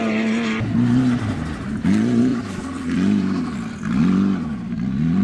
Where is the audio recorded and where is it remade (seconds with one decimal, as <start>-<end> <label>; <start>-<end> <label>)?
0.0-2.3 recorded; 2.3-3.7 remade; 3.7-5.2 recorded